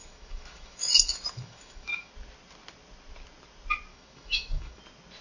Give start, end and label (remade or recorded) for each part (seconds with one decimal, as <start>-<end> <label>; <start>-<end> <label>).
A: 0.0-2.1 remade; 2.1-3.9 recorded; 3.9-4.8 remade; 4.8-5.2 recorded